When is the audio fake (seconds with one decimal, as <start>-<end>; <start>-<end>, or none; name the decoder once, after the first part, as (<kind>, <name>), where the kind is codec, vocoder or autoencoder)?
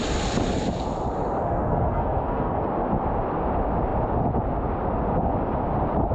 1.4-2.6 (codec, SNAC)